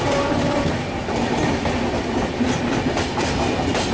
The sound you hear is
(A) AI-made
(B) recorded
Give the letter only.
B